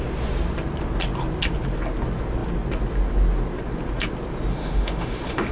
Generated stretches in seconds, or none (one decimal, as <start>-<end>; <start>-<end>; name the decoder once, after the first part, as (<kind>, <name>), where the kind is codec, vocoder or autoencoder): 4.5-5.5 (autoencoder, DAC-VAE)